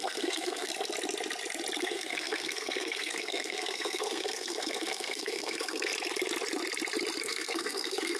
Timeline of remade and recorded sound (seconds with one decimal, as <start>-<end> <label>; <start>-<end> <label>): 0.0-0.7 remade; 0.7-1.8 recorded; 1.8-5.9 remade; 5.9-7.2 recorded; 7.2-8.2 remade